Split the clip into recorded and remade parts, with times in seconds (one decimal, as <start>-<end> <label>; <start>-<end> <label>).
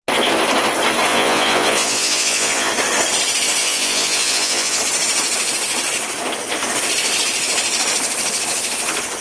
0.0-1.1 recorded; 1.1-2.7 remade; 2.7-3.6 recorded; 3.6-4.8 remade; 4.8-9.2 recorded